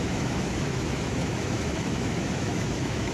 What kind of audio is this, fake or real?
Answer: fake